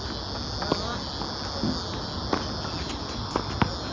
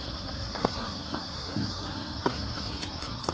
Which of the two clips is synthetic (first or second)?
second